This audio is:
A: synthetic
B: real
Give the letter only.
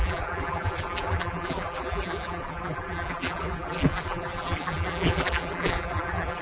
A